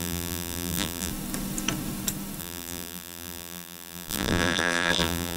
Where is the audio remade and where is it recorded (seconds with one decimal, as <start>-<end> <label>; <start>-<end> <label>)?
0.0-1.1 remade; 1.1-2.4 recorded; 2.4-5.4 remade